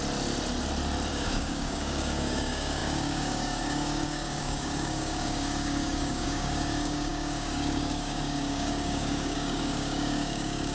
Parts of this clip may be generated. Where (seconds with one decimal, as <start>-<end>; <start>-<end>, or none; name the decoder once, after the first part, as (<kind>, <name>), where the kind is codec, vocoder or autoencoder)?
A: 1.1-10.7 (codec, DAC)